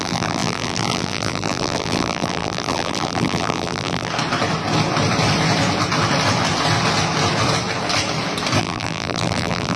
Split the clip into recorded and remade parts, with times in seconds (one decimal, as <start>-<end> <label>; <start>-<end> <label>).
0.0-4.1 remade; 4.1-8.6 recorded; 8.6-9.8 remade

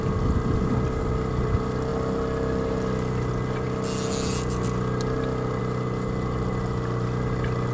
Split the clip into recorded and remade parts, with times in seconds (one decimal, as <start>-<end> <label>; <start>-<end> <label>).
0.0-7.7 recorded

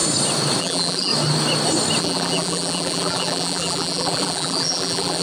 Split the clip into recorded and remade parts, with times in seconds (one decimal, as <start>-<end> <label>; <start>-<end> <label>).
0.0-0.6 recorded; 0.6-1.1 remade; 1.1-2.0 recorded; 2.0-5.2 remade